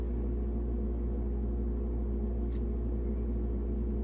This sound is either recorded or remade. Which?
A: recorded